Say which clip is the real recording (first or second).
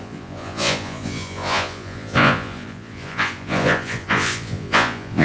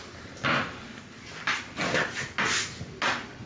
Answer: second